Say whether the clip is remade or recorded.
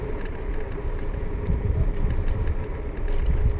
remade